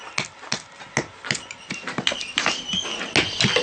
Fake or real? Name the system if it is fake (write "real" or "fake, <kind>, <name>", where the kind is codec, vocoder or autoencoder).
real